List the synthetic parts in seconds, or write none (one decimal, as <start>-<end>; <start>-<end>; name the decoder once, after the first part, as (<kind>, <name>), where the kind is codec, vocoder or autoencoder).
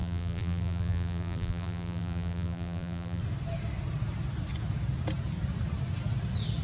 0.0-3.2 (vocoder, BigVGAN v2)